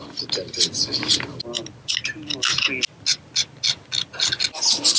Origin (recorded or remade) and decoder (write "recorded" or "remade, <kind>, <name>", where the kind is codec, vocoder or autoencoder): recorded